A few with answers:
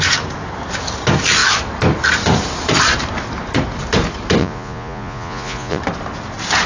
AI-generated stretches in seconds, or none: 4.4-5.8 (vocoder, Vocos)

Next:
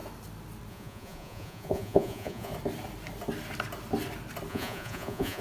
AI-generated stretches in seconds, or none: 0.7-2.5 (vocoder, Vocos); 4.5-5.4